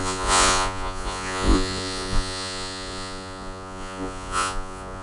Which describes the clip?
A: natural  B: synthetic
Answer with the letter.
B